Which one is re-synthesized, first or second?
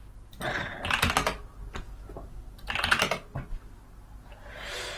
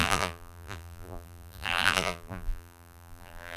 second